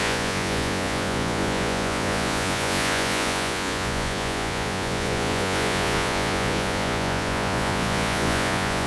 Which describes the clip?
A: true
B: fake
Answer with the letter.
B